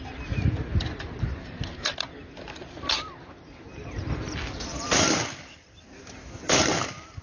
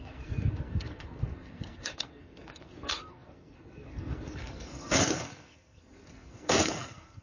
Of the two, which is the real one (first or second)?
first